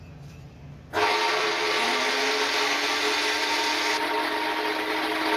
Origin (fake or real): real